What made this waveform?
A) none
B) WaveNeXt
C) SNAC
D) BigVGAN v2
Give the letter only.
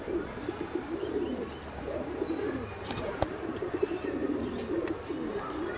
D